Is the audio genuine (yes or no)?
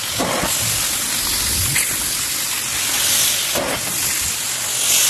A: yes